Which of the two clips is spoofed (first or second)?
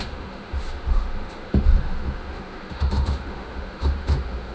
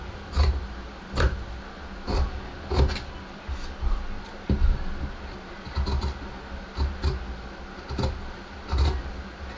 first